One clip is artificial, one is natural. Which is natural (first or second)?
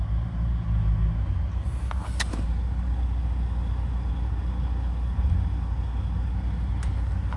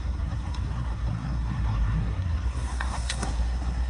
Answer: first